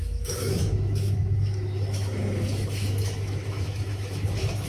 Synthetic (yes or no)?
yes